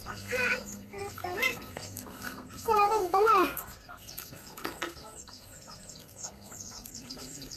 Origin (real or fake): fake